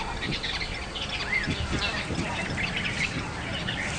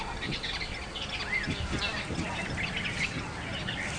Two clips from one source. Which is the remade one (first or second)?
first